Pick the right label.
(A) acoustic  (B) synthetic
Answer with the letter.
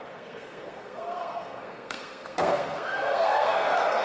B